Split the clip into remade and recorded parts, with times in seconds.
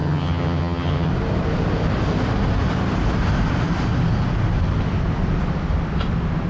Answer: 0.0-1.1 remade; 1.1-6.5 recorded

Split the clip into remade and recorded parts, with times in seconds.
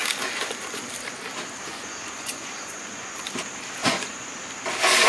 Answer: 0.0-1.7 recorded; 1.7-3.2 remade; 3.2-3.8 recorded; 3.8-4.3 remade; 4.3-5.1 recorded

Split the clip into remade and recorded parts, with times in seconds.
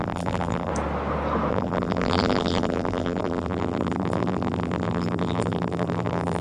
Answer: 0.0-0.7 remade; 0.7-1.5 recorded; 1.5-6.4 remade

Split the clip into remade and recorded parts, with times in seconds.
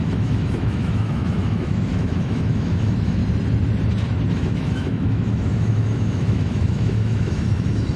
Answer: 0.0-3.2 remade; 3.2-4.3 recorded; 4.3-8.0 remade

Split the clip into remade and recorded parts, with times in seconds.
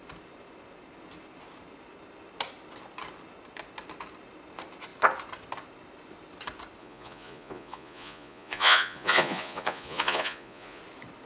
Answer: 0.0-6.8 recorded; 6.8-10.8 remade; 10.8-11.3 recorded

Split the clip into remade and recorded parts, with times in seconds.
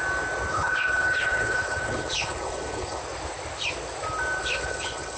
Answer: 0.0-0.5 recorded; 0.5-3.0 remade; 3.0-4.4 recorded; 4.4-5.2 remade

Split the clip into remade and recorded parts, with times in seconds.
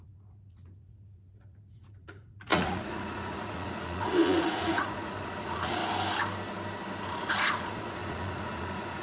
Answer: 0.0-5.8 remade; 5.8-7.0 recorded; 7.0-9.0 remade